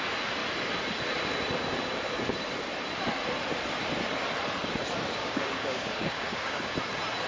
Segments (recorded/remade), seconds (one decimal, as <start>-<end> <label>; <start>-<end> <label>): 0.0-5.2 recorded; 5.2-6.6 remade; 6.6-7.3 recorded